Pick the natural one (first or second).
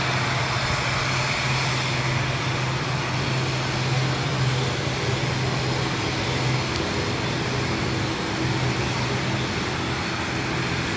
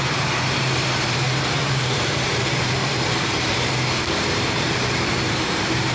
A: first